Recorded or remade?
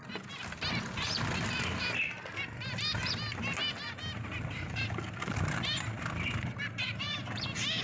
recorded